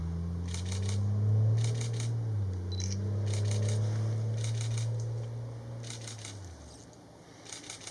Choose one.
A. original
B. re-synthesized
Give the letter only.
A